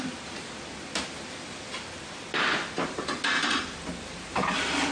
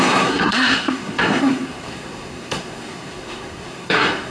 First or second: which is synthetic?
second